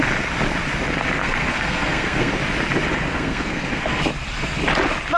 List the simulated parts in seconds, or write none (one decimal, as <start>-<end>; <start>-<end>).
1.2-2.3; 3.1-4.0